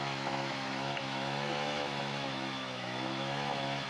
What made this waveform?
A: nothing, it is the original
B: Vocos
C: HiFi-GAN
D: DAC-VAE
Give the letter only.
D